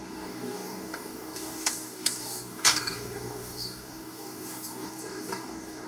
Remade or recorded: remade